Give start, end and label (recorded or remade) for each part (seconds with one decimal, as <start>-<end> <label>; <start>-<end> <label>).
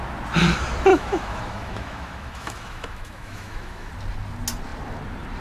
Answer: 0.0-0.9 recorded; 0.9-3.9 remade; 3.9-5.4 recorded